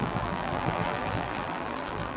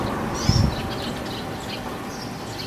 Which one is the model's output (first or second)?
first